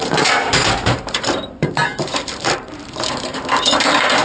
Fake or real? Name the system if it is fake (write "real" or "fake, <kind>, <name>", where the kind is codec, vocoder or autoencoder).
fake, vocoder, BigVGAN v2